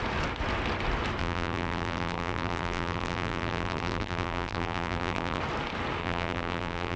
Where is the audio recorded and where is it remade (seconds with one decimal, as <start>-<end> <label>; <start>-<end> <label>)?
0.0-1.2 recorded; 1.2-5.4 remade; 5.4-6.0 recorded; 6.0-7.0 remade